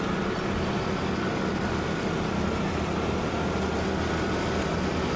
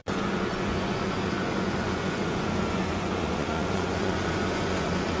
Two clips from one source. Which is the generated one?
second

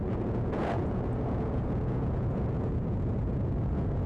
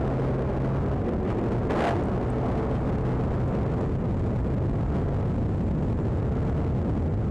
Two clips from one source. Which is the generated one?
first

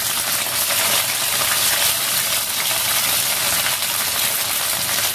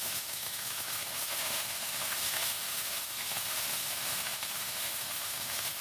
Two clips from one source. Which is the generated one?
second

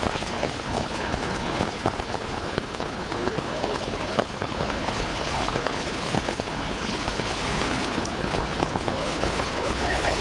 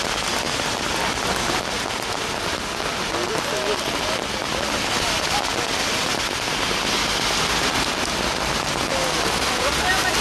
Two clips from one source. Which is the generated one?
first